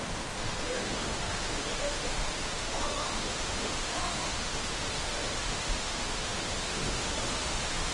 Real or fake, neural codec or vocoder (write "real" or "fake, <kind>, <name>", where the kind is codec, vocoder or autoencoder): fake, autoencoder, DAC-VAE